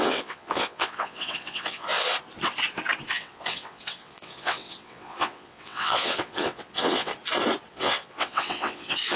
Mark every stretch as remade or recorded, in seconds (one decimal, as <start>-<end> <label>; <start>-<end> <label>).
0.0-2.1 remade; 2.1-3.1 recorded; 3.1-7.1 remade; 7.1-7.7 recorded; 7.7-9.2 remade